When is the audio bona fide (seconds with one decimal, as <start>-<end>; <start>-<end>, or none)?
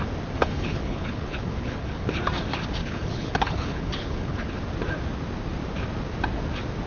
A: 0.0-0.4; 2.2-2.8; 4.6-6.9